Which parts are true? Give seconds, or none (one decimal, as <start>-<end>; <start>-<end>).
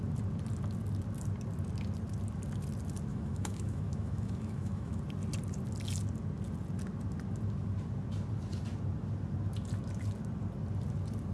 0.0-3.1; 5.0-11.3